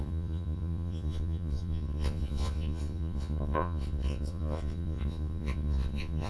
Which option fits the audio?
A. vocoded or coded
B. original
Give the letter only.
A